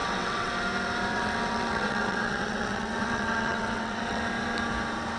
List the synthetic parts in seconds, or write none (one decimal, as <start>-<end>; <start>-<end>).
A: 0.0-0.5; 1.1-4.2